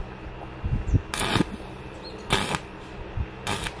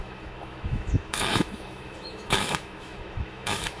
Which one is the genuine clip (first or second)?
first